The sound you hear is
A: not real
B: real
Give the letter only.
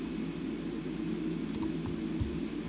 B